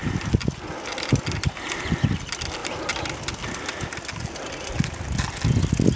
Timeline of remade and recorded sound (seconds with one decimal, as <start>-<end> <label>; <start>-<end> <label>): 0.0-6.0 recorded